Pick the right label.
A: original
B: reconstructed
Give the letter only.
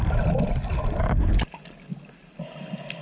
A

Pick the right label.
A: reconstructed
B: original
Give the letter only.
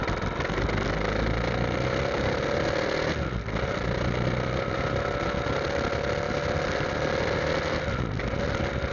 B